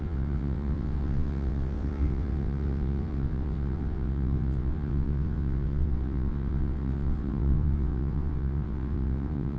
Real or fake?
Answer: fake